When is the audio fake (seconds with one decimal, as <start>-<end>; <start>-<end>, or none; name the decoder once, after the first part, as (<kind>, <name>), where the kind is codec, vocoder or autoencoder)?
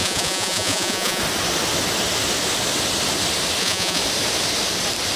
0.0-1.2 (vocoder, Vocos); 3.6-4.0